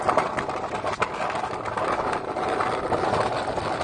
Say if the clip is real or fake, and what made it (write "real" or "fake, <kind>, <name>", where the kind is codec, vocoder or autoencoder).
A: real